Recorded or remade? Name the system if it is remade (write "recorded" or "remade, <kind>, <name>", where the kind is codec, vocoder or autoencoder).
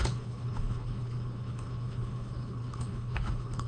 remade, codec, HILCodec